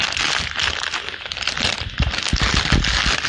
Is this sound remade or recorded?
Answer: recorded